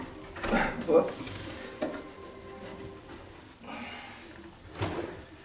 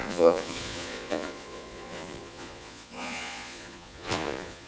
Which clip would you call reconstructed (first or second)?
second